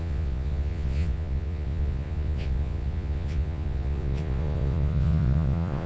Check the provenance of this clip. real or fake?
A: fake